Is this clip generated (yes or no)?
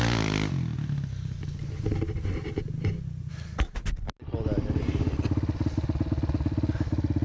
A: no